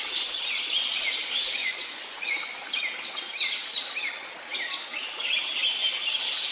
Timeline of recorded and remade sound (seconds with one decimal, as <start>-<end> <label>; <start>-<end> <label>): 0.0-1.6 recorded; 1.6-2.7 remade; 2.7-6.5 recorded